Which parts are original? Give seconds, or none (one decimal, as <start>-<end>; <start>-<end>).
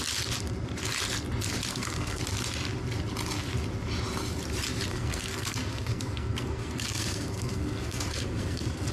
0.0-1.7; 2.2-4.9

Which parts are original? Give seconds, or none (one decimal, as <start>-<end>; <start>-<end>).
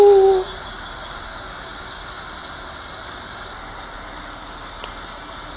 0.0-5.6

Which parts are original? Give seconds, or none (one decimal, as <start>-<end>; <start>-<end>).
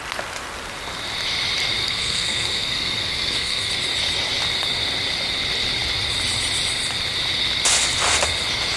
0.0-1.8; 3.7-8.8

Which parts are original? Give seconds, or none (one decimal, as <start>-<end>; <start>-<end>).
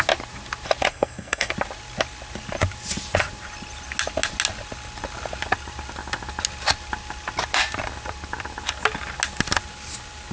0.0-0.9; 1.5-10.3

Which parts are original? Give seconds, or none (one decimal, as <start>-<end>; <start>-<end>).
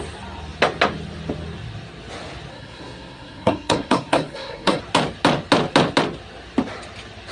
0.0-2.5; 4.8-7.3